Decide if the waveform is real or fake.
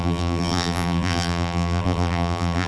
fake